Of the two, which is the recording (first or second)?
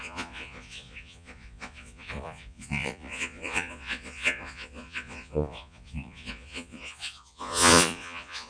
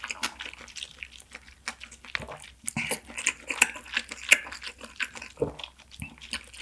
second